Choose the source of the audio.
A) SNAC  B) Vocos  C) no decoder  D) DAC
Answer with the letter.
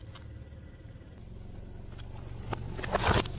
C